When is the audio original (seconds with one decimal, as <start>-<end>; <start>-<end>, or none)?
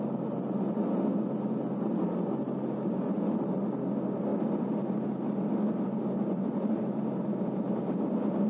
0.0-8.5